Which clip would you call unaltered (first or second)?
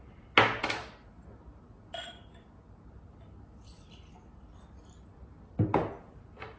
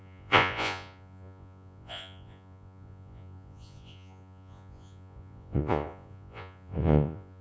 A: first